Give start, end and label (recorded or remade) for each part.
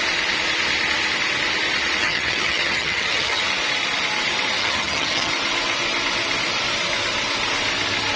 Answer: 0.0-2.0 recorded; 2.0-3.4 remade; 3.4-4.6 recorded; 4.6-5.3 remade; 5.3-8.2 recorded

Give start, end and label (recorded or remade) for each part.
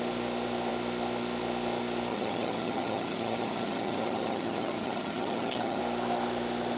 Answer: 0.0-2.1 recorded; 2.1-5.8 remade; 5.8-6.8 recorded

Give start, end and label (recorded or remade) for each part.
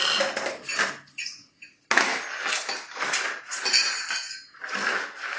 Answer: 0.0-5.4 recorded